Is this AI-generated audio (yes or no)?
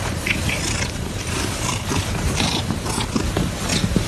yes